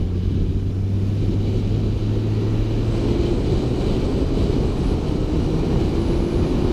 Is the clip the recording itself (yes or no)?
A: yes